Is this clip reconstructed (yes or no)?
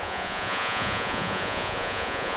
yes